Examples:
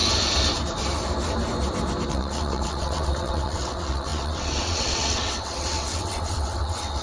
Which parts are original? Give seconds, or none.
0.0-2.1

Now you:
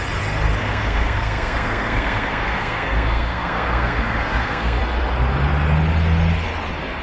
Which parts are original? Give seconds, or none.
0.0-0.6; 4.8-7.0

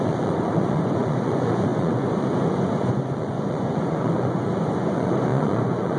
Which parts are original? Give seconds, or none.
none

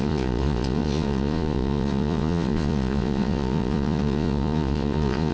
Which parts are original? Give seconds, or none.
none

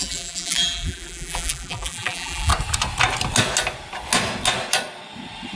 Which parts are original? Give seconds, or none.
2.5-5.6